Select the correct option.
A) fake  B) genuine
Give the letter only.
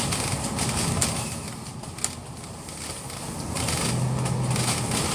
B